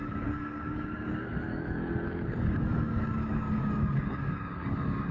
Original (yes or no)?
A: no